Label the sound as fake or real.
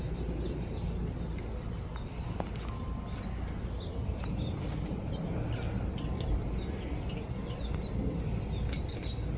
real